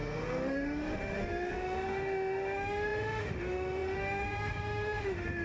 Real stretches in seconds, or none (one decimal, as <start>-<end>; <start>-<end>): none

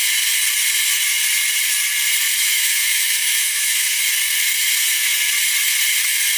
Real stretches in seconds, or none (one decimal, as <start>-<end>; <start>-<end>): 0.0-2.4; 4.0-6.4

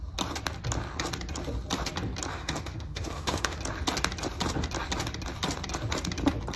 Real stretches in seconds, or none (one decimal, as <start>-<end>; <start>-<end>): 0.0-2.3; 3.6-6.6

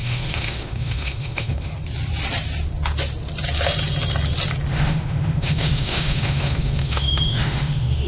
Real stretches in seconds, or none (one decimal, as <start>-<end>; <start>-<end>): 1.7-4.7